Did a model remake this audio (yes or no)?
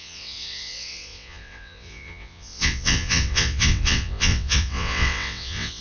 yes